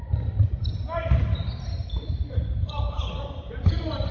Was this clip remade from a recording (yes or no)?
no